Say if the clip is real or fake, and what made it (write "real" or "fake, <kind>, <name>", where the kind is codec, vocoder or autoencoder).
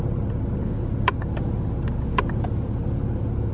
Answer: real